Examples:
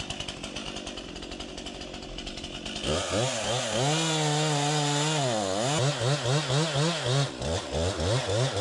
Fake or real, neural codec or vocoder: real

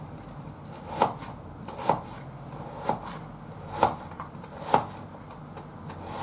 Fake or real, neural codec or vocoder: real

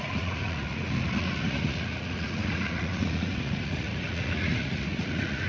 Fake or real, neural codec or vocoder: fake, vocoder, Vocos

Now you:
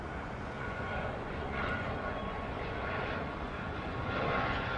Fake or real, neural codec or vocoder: fake, vocoder, Vocos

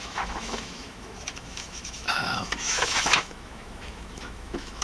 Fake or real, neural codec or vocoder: fake, autoencoder, DAC-VAE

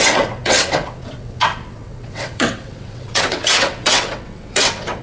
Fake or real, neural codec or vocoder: fake, vocoder, WaveNeXt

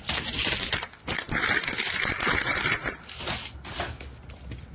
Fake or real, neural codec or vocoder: real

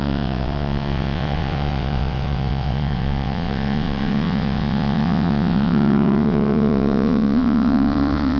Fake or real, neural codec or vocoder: fake, vocoder, WaveNeXt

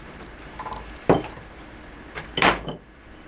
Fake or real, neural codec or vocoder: real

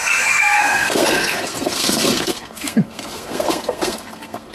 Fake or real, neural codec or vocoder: fake, codec, SNAC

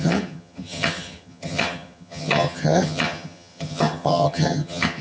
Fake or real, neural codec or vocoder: fake, vocoder, HiFi-GAN